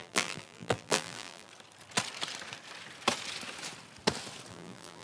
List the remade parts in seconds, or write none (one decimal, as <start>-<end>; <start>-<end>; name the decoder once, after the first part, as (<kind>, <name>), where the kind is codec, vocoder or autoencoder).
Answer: 0.0-1.5 (vocoder, BigVGAN v2); 4.5-5.0